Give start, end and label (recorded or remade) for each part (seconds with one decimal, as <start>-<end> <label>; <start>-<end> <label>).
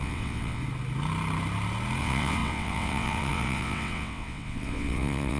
0.0-0.6 remade; 0.6-2.0 recorded; 2.0-5.4 remade